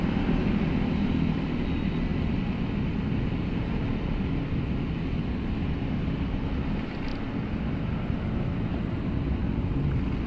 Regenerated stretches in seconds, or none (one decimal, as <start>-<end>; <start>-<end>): none